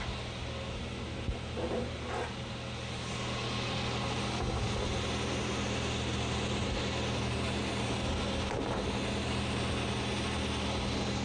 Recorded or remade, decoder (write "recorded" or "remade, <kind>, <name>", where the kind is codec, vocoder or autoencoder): recorded